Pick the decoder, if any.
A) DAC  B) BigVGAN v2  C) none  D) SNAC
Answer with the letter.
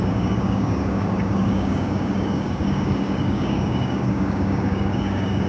A